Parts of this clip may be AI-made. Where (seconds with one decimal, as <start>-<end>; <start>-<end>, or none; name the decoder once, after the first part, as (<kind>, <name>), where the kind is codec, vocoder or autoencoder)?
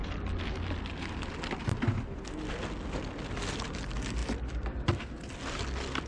none